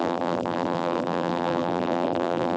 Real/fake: fake